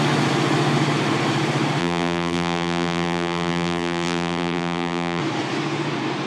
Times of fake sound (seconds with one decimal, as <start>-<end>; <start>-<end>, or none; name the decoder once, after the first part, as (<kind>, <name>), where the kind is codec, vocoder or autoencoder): 1.8-5.2 (vocoder, BigVGAN v2)